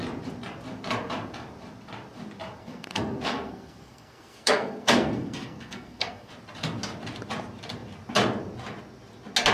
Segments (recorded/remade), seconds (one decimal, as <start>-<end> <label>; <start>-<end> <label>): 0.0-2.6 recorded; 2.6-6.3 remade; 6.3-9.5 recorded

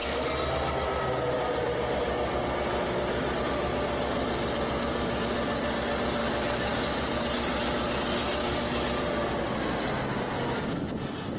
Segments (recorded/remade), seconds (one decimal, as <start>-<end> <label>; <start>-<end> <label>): 0.0-6.2 recorded; 6.2-6.8 remade; 6.8-8.4 recorded; 8.4-9.3 remade; 9.3-11.4 recorded

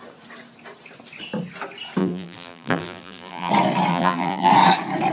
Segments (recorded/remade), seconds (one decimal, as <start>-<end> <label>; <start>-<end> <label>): 0.0-2.0 recorded; 2.0-3.5 remade; 3.5-3.9 recorded; 3.9-4.5 remade; 4.5-5.1 recorded

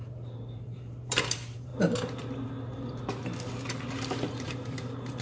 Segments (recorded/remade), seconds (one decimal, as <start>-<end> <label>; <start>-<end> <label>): 0.0-1.7 remade; 1.7-4.3 recorded; 4.3-5.2 remade

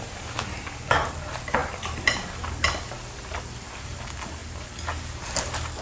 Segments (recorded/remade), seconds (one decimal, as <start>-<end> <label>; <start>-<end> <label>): 0.0-5.8 recorded